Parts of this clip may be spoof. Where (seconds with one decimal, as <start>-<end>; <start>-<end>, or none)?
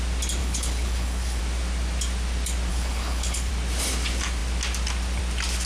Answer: 0.4-1.4; 2.7-3.5